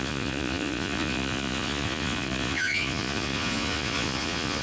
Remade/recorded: remade